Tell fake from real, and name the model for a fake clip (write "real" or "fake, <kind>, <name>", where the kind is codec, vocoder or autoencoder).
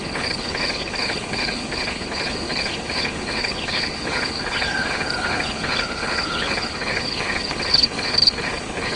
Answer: fake, codec, HILCodec